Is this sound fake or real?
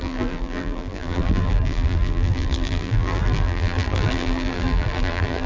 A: fake